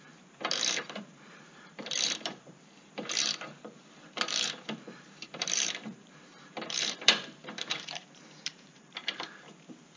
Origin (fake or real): fake